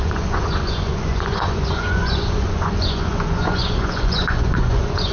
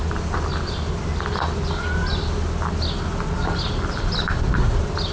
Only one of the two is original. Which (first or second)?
second